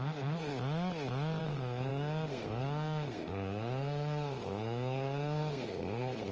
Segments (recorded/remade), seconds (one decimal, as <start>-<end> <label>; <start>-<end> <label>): 0.0-0.5 remade; 0.5-1.4 recorded; 1.4-6.3 remade